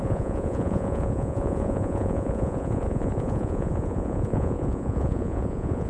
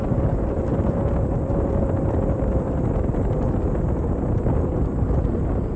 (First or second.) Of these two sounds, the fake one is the first